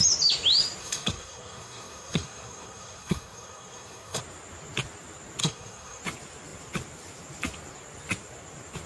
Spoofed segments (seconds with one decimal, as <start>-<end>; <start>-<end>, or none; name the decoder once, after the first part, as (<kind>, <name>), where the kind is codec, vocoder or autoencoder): 0.8-4.2 (codec, SNAC); 5.4-6.0